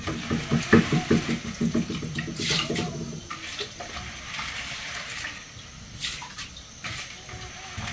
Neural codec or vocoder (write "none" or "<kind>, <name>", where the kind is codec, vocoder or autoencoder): none